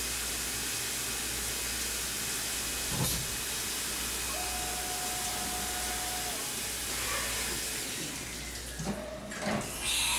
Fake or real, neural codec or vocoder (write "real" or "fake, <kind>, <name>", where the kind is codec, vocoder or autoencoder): real